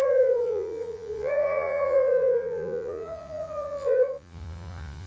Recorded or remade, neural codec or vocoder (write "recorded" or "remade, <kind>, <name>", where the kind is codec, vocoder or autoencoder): remade, vocoder, Vocos